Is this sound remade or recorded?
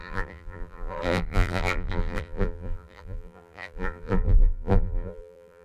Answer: remade